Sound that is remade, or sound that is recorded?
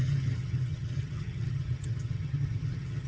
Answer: remade